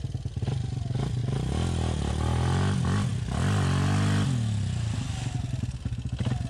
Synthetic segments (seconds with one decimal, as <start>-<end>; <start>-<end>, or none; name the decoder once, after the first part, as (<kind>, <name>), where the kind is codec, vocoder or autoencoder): none